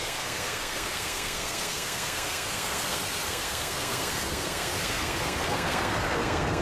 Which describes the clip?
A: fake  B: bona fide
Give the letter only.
A